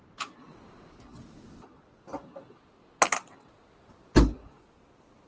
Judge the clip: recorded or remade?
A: recorded